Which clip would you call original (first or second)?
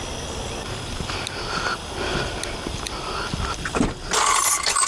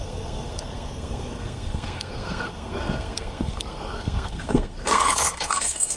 first